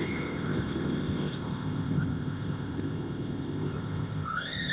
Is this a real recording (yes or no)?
no